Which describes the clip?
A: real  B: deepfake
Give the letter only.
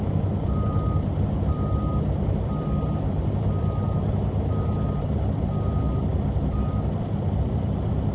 B